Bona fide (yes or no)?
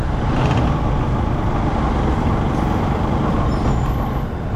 yes